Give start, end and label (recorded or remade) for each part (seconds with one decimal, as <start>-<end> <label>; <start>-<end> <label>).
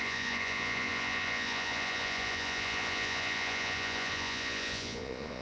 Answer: 0.0-5.4 remade